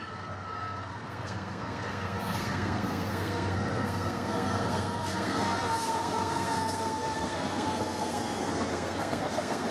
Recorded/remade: remade